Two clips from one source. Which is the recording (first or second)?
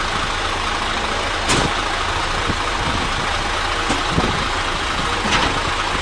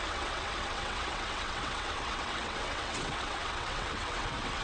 first